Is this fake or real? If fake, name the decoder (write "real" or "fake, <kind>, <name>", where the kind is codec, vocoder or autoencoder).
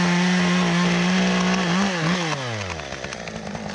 real